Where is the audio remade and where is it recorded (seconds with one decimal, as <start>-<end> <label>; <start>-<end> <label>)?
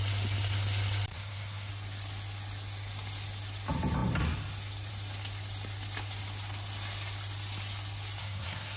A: 0.0-1.1 recorded; 1.1-1.7 remade; 1.7-8.2 recorded; 8.2-8.8 remade